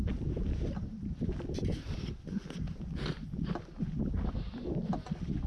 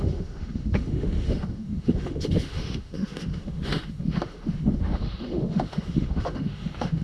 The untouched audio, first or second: first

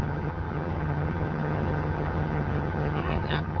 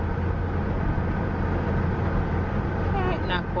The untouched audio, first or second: second